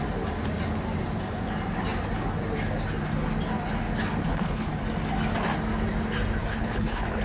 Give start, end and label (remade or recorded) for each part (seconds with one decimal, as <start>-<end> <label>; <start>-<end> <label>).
0.0-4.2 recorded; 4.2-4.8 remade; 4.8-6.4 recorded; 6.4-7.2 remade